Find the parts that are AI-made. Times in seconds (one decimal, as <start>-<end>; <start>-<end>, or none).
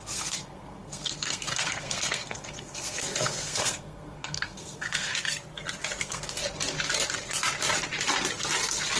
0.0-5.1; 6.0-6.4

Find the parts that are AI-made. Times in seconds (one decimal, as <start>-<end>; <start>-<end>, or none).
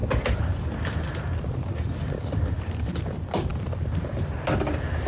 none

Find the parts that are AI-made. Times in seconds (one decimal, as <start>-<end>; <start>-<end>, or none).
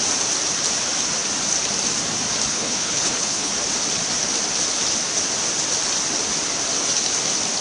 2.5-3.5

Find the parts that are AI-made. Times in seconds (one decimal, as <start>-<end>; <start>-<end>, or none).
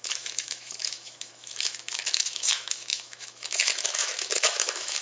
0.0-5.0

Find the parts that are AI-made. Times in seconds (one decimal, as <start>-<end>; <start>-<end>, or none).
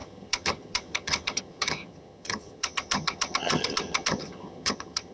0.0-5.1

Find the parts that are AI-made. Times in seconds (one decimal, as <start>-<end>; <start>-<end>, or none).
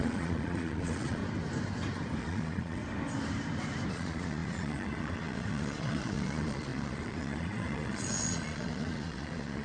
0.0-1.2; 2.2-2.8; 3.9-9.6